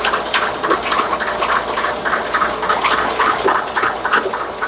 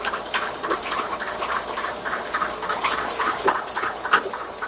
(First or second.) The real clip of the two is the first